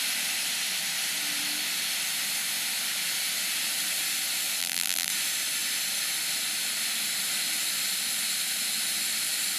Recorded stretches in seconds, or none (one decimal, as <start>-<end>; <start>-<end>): 0.0-4.6; 5.1-9.6